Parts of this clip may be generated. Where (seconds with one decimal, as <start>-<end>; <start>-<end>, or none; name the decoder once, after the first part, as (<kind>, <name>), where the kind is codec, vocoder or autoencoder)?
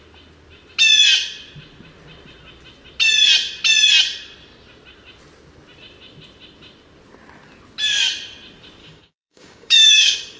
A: 8.8-10.4 (codec, DAC)